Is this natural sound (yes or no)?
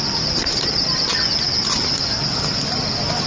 yes